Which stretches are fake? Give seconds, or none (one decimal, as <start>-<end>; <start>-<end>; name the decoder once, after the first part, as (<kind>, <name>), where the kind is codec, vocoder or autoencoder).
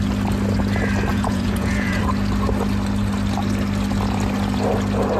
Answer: 1.1-2.0 (vocoder, Vocos)